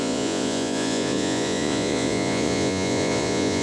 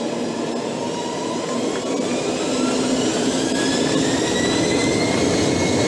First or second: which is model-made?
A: first